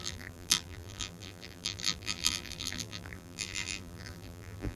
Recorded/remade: remade